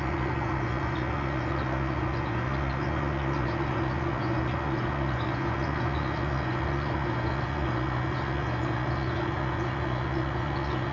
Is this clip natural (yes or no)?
no